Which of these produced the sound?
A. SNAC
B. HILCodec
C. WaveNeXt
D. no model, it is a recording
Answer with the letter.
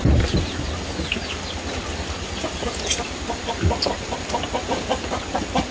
D